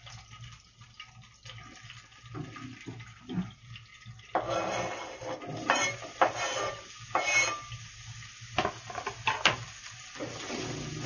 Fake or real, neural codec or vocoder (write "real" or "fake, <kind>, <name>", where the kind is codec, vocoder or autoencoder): real